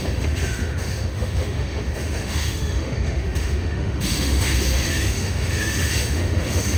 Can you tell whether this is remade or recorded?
remade